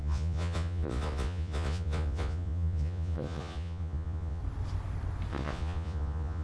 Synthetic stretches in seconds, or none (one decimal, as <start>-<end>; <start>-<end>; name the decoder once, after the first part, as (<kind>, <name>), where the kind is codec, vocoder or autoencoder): 0.0-4.4 (vocoder, Vocos); 5.3-6.4